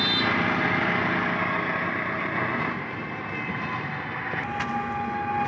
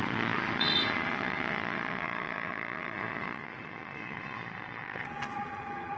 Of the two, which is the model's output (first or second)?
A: second